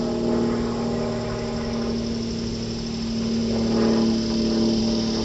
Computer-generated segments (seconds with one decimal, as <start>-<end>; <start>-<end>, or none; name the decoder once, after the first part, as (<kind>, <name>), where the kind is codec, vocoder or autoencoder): none